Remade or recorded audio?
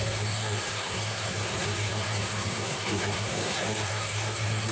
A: remade